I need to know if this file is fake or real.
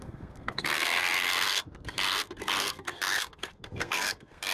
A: fake